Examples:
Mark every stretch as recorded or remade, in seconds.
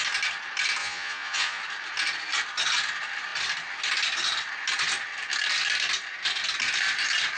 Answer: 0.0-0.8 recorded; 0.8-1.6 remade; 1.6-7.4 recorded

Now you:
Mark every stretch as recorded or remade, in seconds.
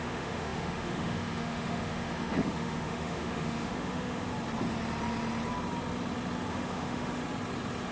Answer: 0.0-4.3 remade; 4.3-6.5 recorded; 6.5-7.2 remade; 7.2-7.9 recorded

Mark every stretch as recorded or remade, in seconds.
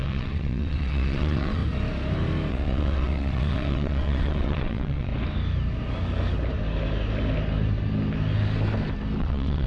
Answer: 0.0-1.6 remade; 1.6-2.5 recorded; 2.5-5.1 remade; 5.1-9.2 recorded; 9.2-9.7 remade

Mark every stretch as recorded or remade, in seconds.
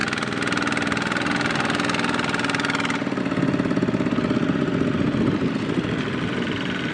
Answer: 0.0-6.9 recorded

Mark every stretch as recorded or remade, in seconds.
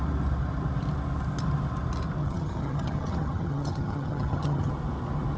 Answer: 0.0-2.2 recorded; 2.2-4.7 remade; 4.7-5.4 recorded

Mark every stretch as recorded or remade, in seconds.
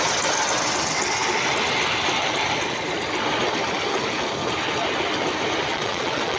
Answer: 0.0-5.7 recorded; 5.7-6.4 remade